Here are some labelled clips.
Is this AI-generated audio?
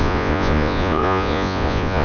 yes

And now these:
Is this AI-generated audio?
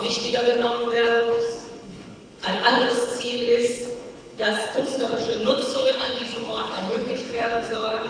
yes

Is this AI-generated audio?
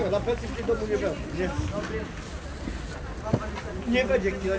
no